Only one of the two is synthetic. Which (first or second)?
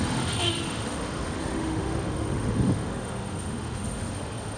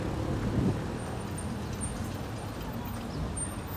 first